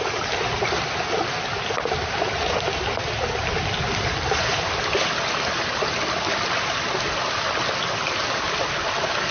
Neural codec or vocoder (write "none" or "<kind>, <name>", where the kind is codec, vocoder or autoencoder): none